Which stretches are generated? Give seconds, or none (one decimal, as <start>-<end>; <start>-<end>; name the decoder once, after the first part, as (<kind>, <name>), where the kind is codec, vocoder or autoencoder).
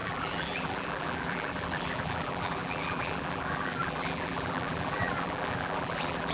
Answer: 0.0-6.3 (vocoder, BigVGAN v2)